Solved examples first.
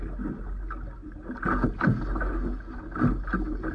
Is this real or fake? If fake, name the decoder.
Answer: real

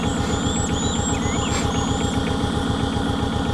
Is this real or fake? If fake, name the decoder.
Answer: real